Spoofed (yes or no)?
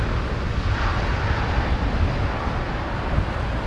no